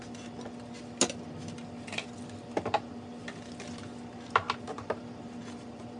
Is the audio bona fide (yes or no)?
yes